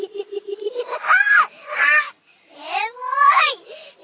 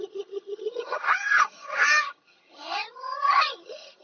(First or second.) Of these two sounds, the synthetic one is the second